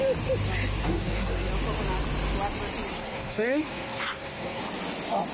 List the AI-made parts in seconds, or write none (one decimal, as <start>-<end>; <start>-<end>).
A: 0.8-1.5; 3.0-4.6